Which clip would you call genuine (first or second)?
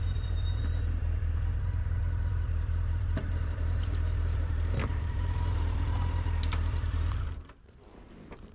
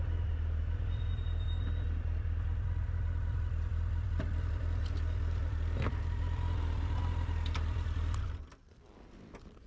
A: second